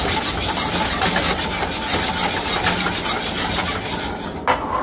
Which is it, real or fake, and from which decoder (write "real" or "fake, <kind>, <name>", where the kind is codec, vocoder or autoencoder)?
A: real